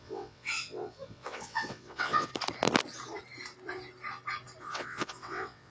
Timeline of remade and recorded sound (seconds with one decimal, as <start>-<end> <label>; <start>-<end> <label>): 0.0-2.3 remade; 2.3-4.6 recorded; 4.6-5.7 remade